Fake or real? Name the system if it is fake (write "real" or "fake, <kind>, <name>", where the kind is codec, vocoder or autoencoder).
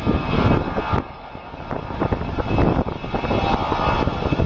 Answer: real